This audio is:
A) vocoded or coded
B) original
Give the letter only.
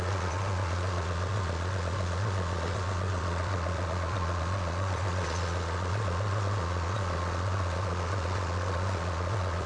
A